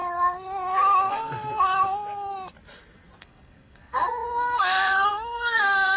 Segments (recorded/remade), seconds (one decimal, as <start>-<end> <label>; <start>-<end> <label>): 0.0-1.1 recorded; 1.1-1.5 remade; 1.5-3.2 recorded; 3.2-6.0 remade